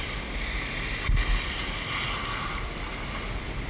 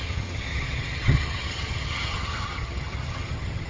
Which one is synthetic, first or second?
second